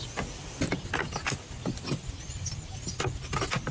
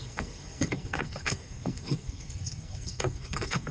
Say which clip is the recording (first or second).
first